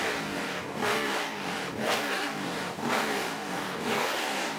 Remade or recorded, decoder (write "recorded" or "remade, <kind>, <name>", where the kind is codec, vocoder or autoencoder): remade, codec, DAC